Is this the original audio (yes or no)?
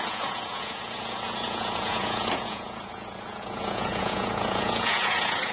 no